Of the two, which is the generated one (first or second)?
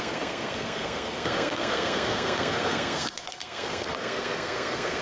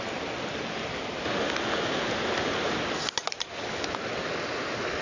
first